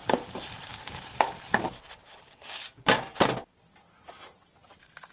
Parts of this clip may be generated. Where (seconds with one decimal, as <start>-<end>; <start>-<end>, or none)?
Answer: 0.0-1.9